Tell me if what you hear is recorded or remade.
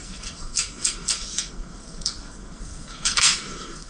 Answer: remade